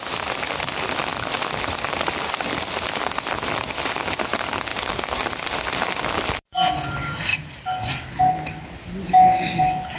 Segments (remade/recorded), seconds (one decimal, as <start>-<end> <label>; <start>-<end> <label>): 0.0-4.7 recorded; 4.7-5.6 remade; 5.6-10.0 recorded